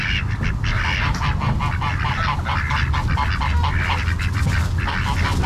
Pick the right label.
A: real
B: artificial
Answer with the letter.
A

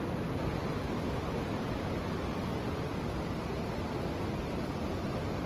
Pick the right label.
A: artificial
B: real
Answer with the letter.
B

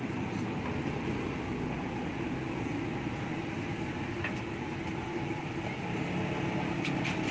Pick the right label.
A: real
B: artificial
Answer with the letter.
A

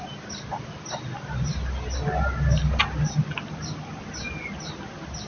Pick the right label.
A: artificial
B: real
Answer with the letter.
B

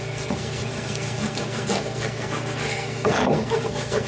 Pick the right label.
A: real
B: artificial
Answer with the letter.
B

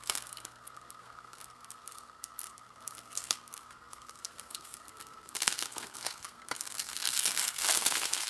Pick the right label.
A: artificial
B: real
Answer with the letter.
A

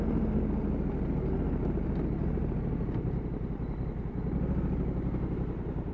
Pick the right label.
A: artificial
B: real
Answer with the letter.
B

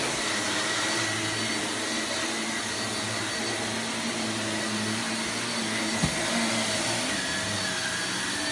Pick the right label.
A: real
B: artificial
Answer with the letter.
A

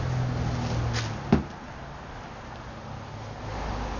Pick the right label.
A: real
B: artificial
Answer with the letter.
A